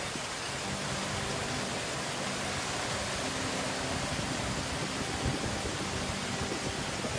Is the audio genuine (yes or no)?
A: yes